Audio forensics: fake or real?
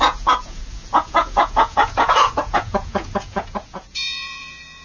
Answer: fake